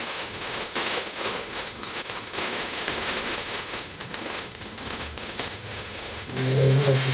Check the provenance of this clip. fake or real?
fake